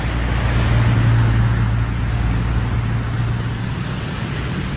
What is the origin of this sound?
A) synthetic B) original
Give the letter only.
B